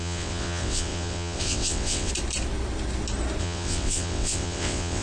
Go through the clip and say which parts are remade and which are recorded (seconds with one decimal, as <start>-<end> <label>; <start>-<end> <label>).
0.0-2.1 remade; 2.1-3.4 recorded; 3.4-5.0 remade